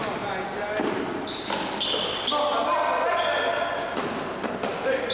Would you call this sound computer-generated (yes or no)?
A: no